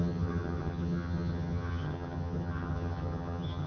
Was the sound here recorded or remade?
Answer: remade